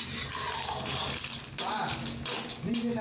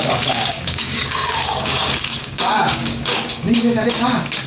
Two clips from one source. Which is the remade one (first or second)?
second